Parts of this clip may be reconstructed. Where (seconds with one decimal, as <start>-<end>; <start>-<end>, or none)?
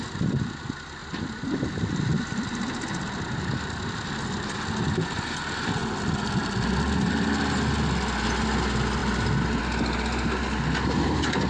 none